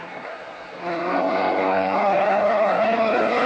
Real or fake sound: fake